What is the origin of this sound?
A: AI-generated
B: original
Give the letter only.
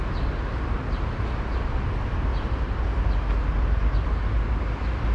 B